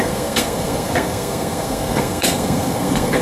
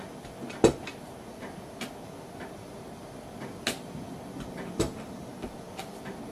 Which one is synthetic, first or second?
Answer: first